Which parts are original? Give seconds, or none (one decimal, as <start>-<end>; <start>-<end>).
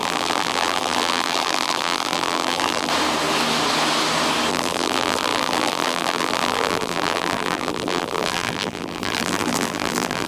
2.9-4.5